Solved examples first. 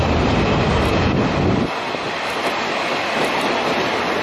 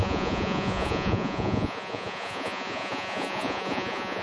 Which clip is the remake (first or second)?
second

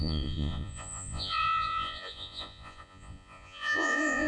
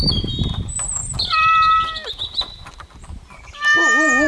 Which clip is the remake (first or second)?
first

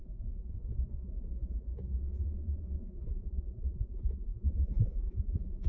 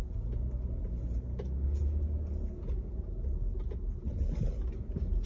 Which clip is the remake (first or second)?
first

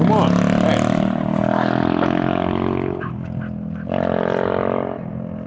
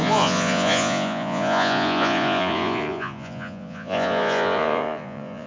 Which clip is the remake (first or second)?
second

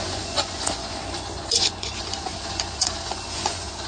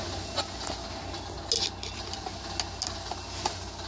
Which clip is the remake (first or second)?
first